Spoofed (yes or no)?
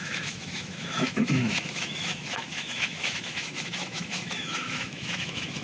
yes